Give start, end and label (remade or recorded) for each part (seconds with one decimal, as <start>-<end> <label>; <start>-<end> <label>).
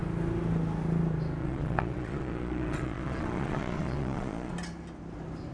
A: 0.0-1.4 recorded; 1.4-4.5 remade; 4.5-5.5 recorded